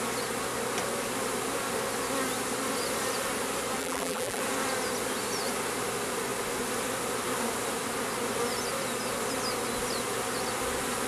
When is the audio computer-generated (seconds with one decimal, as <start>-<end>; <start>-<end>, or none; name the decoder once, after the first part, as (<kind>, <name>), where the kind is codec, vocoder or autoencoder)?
3.8-4.4 (vocoder, BigVGAN v2)